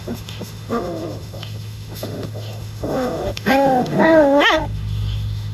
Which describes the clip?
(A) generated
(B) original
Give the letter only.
A